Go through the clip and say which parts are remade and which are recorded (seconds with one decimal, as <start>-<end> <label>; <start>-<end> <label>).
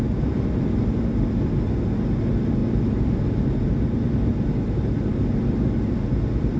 0.0-6.6 recorded